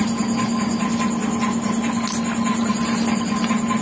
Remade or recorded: recorded